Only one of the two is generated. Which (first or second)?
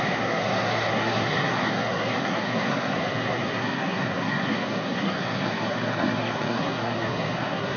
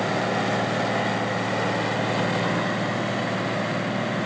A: first